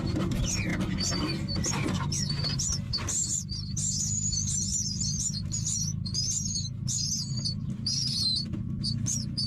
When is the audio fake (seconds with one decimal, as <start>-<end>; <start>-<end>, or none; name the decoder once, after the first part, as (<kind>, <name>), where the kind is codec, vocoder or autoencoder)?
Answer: 0.0-0.7 (vocoder, BigVGAN v2); 2.3-4.7; 5.4-5.9; 7.1-9.5